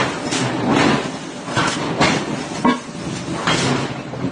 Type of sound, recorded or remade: recorded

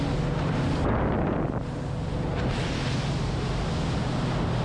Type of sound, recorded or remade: recorded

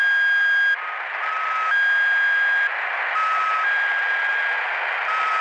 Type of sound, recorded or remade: recorded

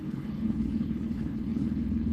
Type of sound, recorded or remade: remade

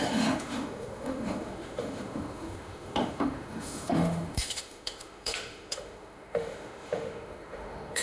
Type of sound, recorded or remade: remade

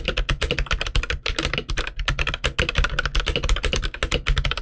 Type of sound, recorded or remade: recorded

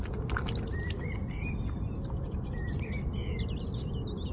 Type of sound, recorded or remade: recorded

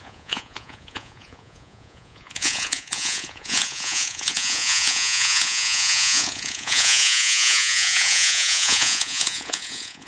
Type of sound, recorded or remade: remade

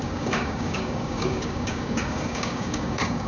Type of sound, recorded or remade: remade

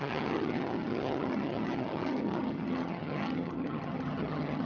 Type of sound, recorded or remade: remade